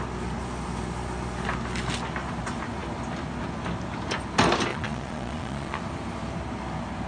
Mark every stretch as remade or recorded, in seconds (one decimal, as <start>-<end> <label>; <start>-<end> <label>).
0.0-4.7 recorded; 4.7-5.8 remade; 5.8-7.1 recorded